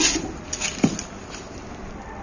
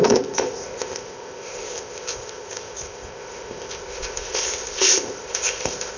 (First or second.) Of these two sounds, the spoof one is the second